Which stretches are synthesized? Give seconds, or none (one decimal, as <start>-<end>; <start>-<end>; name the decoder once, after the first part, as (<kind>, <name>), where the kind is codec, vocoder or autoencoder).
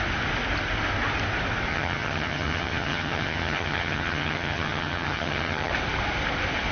1.7-5.7 (vocoder, HiFi-GAN)